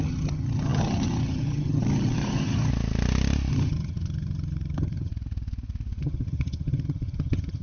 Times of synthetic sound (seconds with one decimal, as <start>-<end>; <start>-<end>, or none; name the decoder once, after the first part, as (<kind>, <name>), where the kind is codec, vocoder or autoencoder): 0.0-2.7 (vocoder, HiFi-GAN); 3.5-5.1; 6.0-7.6